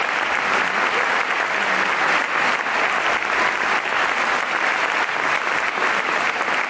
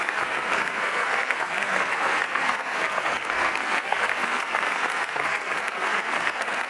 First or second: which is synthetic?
second